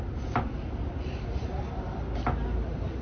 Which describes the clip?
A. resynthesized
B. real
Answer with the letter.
B